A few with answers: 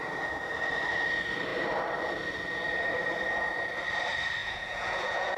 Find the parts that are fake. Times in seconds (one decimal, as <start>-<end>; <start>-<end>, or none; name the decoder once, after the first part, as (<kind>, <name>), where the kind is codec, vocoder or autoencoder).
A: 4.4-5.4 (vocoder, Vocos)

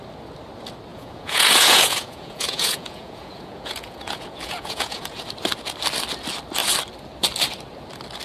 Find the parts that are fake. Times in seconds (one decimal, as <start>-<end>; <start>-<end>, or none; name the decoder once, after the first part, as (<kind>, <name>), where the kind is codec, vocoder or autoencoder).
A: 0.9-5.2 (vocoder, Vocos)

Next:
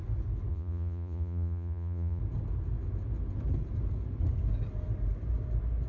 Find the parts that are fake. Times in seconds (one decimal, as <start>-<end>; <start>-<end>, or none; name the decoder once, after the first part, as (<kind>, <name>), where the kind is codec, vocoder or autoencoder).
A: 0.5-2.2 (vocoder, Vocos)